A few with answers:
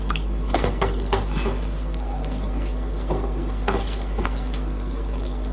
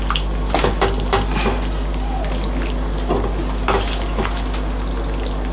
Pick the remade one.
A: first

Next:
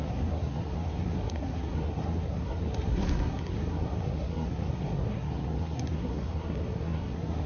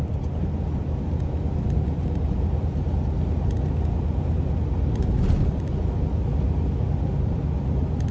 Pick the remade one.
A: first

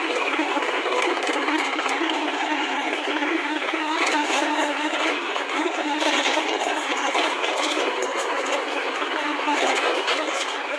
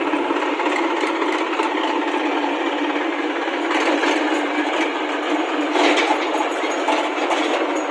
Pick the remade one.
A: first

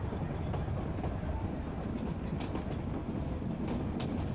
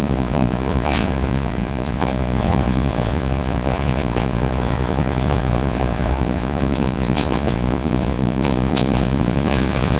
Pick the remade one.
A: second